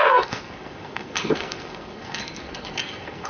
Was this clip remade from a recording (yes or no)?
yes